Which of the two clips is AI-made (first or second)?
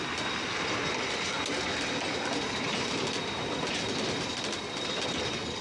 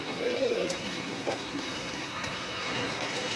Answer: second